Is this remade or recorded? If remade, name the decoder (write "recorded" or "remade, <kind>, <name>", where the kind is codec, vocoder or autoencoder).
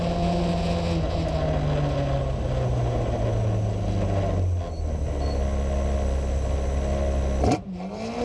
recorded